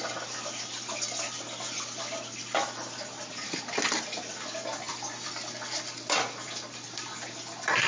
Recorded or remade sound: recorded